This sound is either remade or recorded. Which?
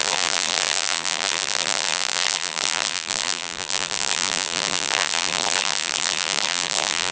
remade